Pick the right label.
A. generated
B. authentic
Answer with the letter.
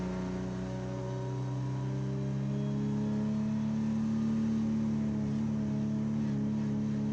B